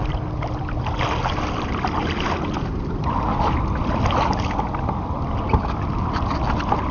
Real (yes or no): yes